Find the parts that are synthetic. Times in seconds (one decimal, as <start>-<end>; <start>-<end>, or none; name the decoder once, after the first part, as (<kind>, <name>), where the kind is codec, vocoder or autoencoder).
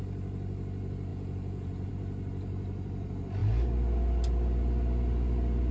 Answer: 1.1-1.9 (vocoder, Vocos)